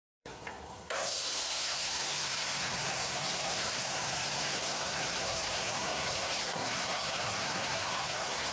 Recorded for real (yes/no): no